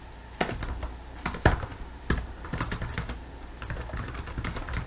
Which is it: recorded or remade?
recorded